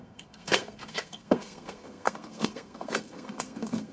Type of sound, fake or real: fake